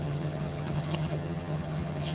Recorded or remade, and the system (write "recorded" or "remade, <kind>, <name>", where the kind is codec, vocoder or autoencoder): remade, vocoder, HiFi-GAN